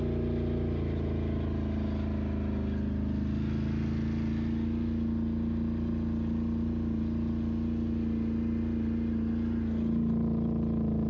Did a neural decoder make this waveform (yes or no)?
no